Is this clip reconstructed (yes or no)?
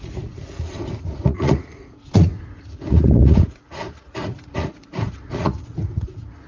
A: yes